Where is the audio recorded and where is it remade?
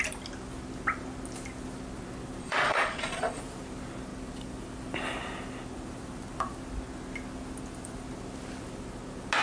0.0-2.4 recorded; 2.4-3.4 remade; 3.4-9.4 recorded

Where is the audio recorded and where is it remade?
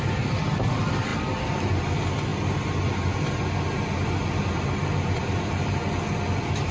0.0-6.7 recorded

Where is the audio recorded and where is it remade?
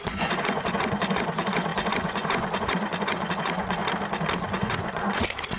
0.0-3.8 remade; 3.8-4.5 recorded; 4.5-5.6 remade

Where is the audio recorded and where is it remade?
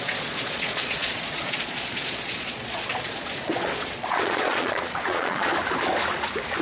0.0-5.5 remade; 5.5-6.6 recorded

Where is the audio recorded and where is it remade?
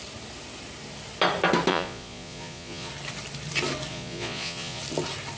0.0-1.7 recorded; 1.7-2.9 remade; 2.9-3.9 recorded; 3.9-4.8 remade; 4.8-5.4 recorded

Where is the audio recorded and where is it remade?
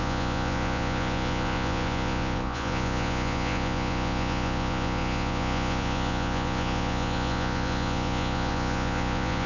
0.0-9.5 remade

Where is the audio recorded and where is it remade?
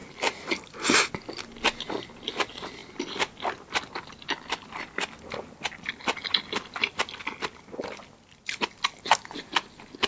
0.0-10.1 recorded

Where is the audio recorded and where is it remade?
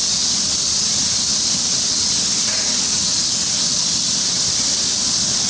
0.0-5.5 recorded